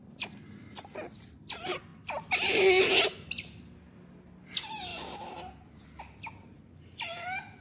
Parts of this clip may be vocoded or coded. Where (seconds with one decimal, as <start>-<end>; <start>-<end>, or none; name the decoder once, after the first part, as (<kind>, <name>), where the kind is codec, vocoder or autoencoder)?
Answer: none